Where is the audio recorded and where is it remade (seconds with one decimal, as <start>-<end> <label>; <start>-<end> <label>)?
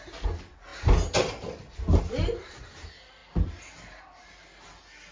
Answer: 0.0-5.1 recorded